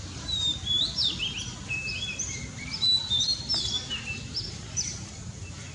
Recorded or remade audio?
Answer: remade